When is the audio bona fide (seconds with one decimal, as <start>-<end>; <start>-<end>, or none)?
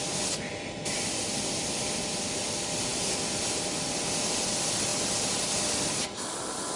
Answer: 0.0-6.8